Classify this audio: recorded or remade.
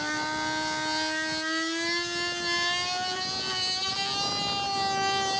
recorded